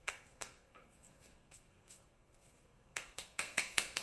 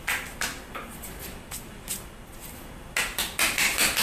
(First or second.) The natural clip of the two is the second